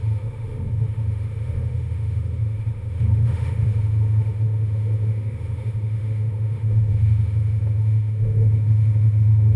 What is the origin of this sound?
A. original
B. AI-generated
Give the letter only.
B